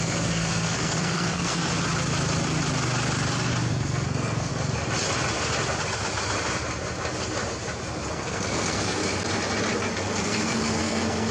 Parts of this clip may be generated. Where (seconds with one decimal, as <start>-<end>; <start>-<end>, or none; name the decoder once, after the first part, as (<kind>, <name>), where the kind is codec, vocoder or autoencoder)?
0.0-1.7 (codec, SNAC); 3.7-4.5; 8.1-9.0; 9.9-11.3